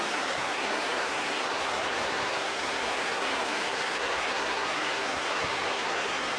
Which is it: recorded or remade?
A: remade